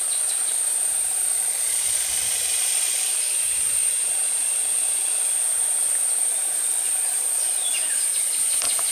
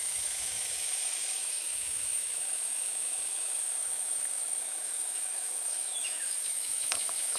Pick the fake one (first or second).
second